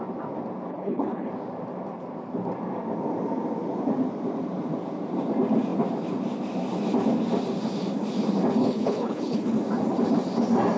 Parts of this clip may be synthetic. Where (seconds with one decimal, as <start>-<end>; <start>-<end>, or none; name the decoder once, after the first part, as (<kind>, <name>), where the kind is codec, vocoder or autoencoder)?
0.7-1.3 (codec, HILCodec); 8.6-9.6